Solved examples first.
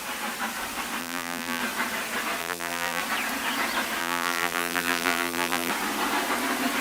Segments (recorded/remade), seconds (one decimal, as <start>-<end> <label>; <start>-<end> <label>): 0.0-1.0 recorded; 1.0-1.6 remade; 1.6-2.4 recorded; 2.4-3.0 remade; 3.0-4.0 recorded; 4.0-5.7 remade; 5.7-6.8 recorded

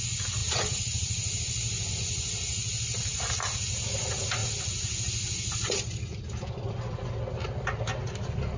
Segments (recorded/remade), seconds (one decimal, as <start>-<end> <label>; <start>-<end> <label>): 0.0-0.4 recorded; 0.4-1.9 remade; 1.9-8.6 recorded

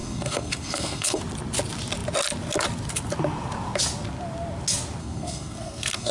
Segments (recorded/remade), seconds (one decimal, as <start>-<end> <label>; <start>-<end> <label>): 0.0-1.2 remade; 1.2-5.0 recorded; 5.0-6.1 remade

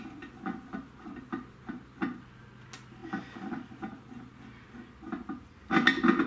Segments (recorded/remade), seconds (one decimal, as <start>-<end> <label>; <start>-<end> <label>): 0.0-6.3 recorded

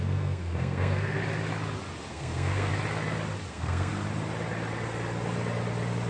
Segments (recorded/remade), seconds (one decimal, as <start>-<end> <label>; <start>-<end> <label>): 0.0-1.2 remade; 1.2-2.1 recorded; 2.1-2.7 remade; 2.7-3.5 recorded; 3.5-3.9 remade; 3.9-6.1 recorded